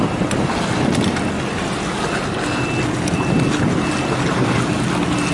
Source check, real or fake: real